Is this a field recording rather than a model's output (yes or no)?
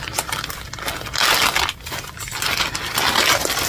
yes